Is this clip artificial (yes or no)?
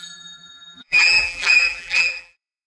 yes